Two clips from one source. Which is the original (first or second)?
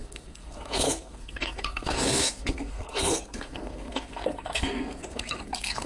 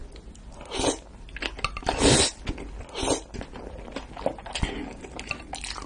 second